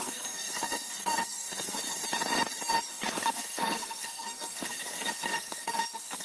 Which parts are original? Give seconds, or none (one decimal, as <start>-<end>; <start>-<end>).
2.0-2.9